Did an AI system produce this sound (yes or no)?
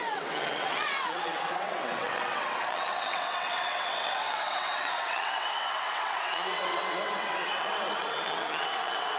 yes